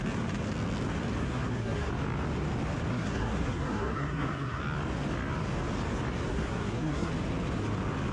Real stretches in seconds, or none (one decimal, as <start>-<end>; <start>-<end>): 0.0-1.2; 1.9-2.9; 4.6-6.3; 7.1-8.1